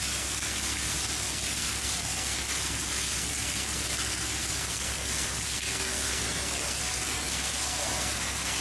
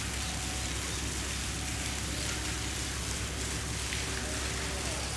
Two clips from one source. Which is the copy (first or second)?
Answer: first